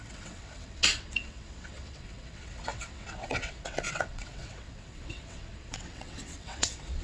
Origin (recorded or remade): remade